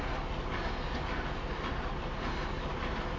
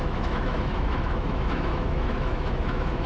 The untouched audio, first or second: first